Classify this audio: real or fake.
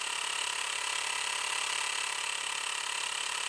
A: real